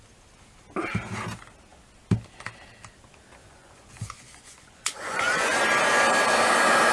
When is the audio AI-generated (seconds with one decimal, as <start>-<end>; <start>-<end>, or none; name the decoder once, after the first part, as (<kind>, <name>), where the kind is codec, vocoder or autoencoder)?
3.4-5.6 (vocoder, Vocos)